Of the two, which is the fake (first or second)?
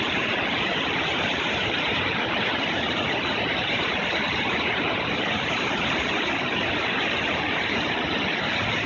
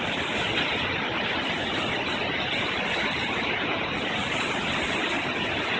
first